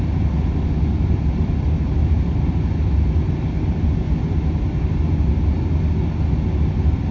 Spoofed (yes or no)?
no